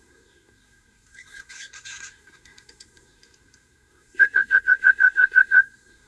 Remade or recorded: remade